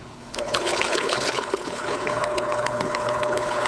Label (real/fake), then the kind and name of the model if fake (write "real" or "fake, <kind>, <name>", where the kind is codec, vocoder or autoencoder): fake, codec, HILCodec